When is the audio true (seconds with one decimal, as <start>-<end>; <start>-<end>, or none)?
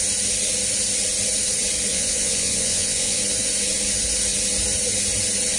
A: 0.0-1.9; 3.2-5.6